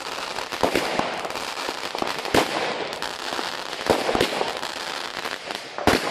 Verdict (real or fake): real